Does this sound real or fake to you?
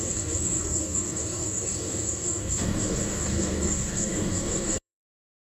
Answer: fake